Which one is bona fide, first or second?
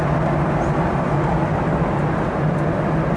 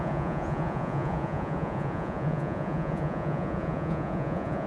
first